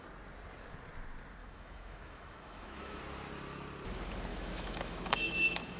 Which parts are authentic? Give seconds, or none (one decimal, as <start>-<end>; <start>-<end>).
0.0-1.4; 3.0-4.3